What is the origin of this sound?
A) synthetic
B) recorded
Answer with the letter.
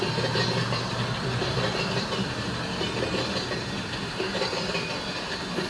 B